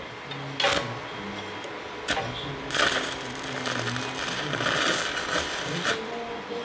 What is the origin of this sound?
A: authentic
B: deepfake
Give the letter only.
A